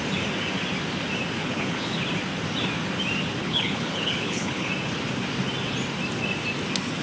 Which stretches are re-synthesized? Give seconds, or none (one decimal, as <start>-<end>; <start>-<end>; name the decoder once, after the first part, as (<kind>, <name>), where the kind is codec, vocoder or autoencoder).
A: 1.4-2.0 (codec, HILCodec); 3.4-4.7